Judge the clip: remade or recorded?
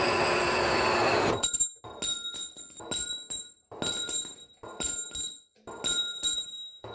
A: recorded